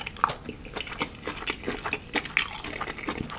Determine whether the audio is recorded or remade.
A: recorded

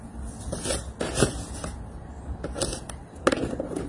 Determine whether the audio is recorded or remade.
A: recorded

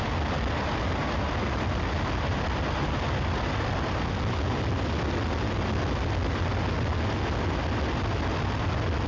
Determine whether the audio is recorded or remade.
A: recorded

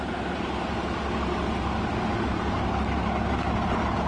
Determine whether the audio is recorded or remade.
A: recorded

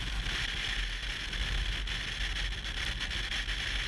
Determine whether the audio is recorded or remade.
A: recorded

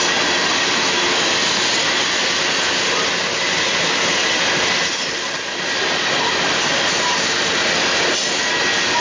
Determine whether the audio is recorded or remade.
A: recorded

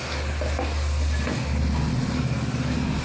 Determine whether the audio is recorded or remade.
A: recorded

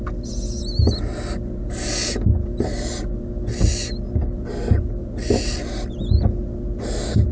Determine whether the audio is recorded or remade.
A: recorded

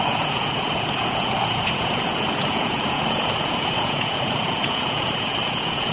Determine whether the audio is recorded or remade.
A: remade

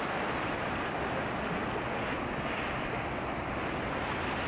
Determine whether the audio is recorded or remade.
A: recorded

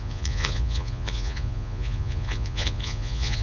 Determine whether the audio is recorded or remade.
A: remade